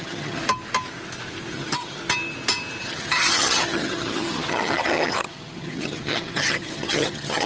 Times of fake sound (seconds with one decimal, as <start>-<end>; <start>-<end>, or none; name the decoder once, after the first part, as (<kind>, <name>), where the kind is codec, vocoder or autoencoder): 0.0-0.4 (vocoder, HiFi-GAN); 1.5-2.0; 2.8-7.5